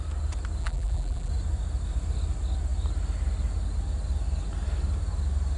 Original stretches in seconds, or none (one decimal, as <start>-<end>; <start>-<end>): 0.0-0.6; 1.3-5.6